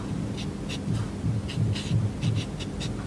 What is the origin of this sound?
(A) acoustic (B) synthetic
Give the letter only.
A